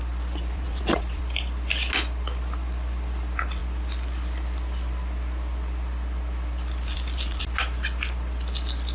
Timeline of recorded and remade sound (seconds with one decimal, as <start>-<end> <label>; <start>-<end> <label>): 0.0-8.9 recorded